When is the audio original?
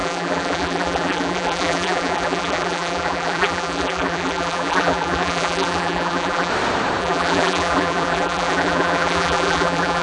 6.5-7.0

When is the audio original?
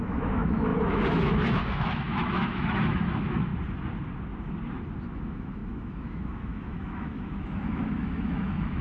3.5-5.0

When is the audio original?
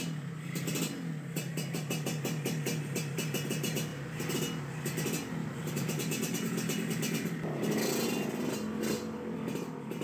0.0-5.4; 7.4-10.0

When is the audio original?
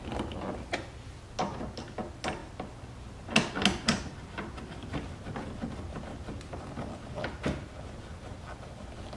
0.0-9.2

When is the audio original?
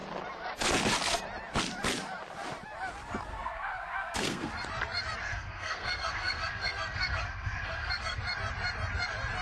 0.0-3.3; 4.5-5.2; 8.2-9.4